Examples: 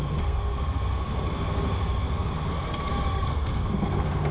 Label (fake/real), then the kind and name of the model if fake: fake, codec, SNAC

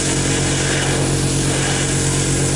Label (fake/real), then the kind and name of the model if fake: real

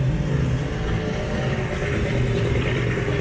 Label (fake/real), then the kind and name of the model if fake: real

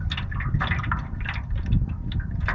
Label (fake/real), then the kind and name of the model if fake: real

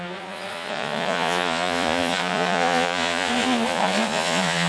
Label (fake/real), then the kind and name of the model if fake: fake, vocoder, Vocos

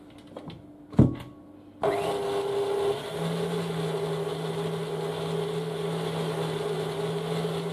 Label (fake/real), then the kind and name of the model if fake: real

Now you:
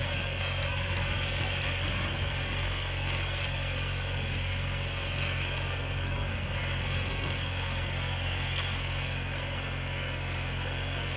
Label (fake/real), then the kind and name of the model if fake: fake, codec, SNAC